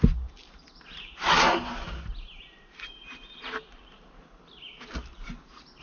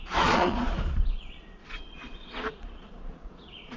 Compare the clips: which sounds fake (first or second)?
second